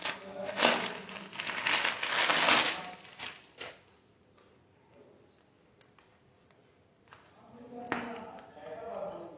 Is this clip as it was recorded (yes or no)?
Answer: yes